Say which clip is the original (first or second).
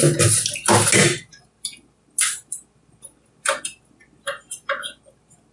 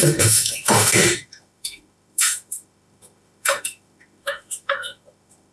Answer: first